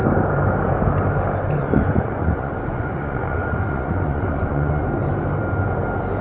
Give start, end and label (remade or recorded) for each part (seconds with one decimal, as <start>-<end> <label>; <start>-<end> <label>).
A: 0.0-1.6 recorded; 1.6-4.8 remade; 4.8-6.2 recorded